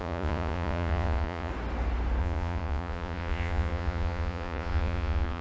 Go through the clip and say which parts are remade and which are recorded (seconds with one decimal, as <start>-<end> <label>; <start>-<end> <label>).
0.0-1.5 remade; 1.5-2.2 recorded; 2.2-5.4 remade